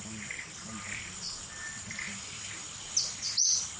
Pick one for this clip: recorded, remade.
recorded